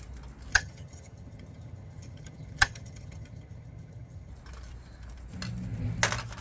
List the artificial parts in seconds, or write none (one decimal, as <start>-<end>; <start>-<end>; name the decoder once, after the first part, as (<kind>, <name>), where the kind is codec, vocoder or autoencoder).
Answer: 0.5-4.3 (vocoder, HiFi-GAN)